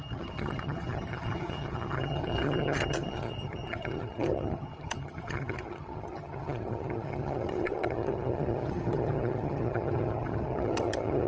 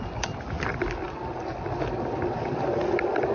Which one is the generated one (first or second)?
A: first